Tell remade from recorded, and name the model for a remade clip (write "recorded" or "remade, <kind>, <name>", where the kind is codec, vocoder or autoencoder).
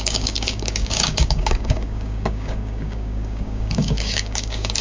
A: remade, codec, DAC